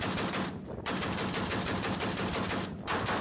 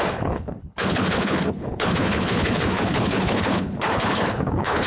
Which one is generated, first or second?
second